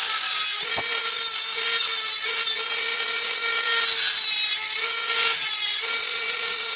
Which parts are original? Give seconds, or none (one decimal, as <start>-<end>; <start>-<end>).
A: 0.0-6.8